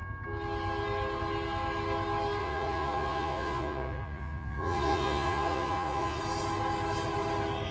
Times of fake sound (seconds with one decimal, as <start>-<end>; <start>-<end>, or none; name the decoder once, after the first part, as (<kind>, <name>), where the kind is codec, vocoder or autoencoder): 2.4-6.2 (vocoder, Vocos)

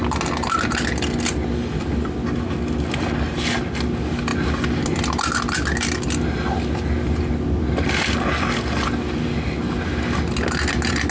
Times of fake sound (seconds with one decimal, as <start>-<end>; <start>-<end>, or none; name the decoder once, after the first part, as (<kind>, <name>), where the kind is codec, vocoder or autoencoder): none

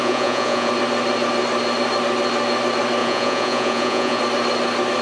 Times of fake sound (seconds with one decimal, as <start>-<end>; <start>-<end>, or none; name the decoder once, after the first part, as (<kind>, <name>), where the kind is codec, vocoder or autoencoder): 0.0-0.7 (vocoder, Vocos); 3.0-4.2

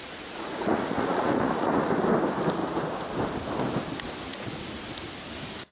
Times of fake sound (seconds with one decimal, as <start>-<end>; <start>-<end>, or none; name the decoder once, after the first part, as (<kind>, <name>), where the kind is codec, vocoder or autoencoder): 0.0-1.9 (vocoder, Vocos); 4.3-4.8